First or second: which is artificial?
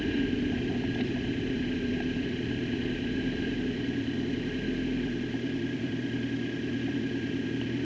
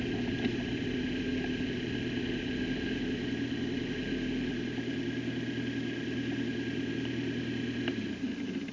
first